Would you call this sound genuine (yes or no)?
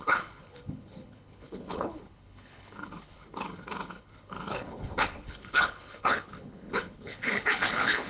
no